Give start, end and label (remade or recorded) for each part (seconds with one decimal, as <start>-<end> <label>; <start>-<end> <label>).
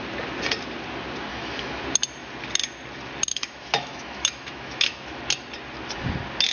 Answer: 0.0-1.3 recorded; 1.3-1.8 remade; 1.8-3.3 recorded; 3.3-5.2 remade; 5.2-6.5 recorded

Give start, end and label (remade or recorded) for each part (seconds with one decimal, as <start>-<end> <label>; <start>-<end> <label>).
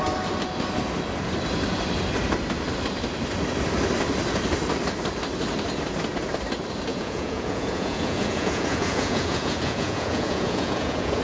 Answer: 0.0-6.9 recorded; 6.9-11.2 remade